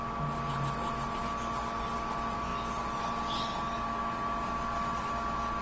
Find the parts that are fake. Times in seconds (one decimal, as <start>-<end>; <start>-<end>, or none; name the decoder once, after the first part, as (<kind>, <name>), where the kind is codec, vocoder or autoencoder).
none